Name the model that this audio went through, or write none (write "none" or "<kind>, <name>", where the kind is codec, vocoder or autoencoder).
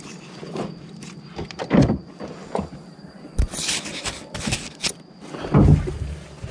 vocoder, BigVGAN v2